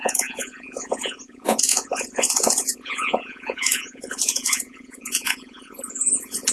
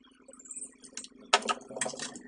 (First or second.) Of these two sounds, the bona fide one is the second